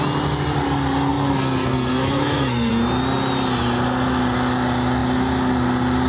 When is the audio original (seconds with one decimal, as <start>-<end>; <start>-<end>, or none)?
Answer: 0.0-1.1; 2.7-6.1